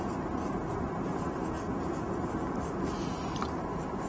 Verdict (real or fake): real